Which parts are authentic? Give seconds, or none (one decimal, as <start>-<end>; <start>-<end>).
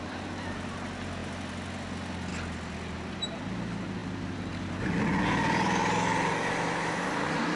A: 0.0-7.6